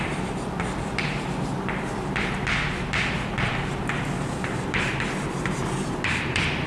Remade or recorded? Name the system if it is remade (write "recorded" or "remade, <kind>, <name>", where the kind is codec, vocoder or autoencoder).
remade, vocoder, BigVGAN v2